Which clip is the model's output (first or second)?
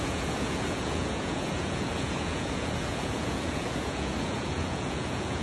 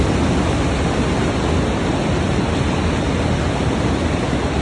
first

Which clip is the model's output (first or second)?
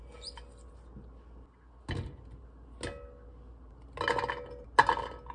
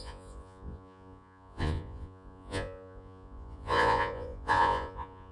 second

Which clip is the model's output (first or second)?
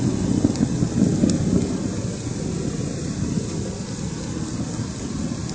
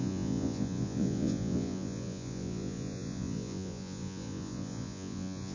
second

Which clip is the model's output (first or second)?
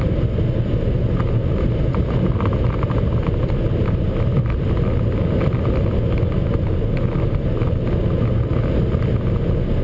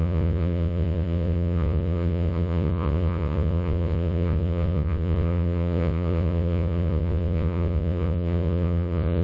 second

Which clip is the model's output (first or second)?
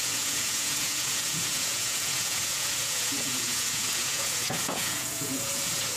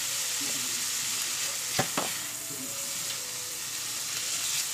first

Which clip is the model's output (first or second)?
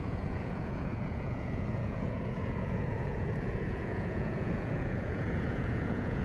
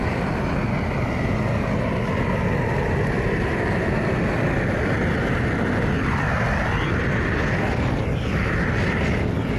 first